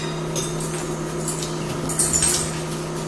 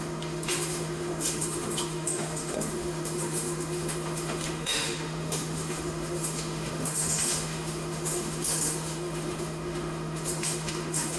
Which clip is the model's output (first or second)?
second